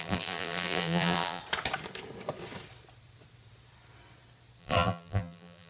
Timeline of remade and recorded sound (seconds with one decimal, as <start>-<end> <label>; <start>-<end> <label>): 0.0-1.4 remade; 1.4-4.6 recorded; 4.6-5.7 remade